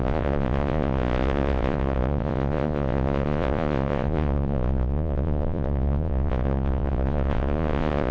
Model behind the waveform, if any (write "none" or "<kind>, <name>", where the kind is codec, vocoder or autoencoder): vocoder, Vocos